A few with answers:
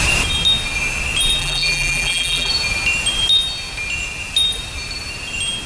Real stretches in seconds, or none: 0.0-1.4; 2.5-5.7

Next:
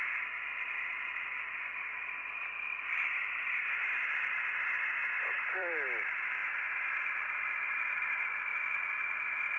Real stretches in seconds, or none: 6.4-6.9; 8.5-9.6

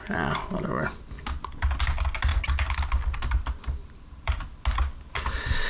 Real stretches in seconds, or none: 0.0-3.8; 4.4-5.7